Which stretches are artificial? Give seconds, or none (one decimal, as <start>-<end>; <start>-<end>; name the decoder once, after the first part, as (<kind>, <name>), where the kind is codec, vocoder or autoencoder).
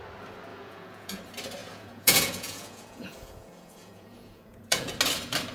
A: 0.5-1.2 (vocoder, Vocos); 1.6-4.9